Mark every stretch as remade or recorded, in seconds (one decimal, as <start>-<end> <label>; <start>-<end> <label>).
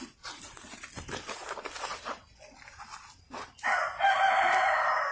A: 0.0-5.1 recorded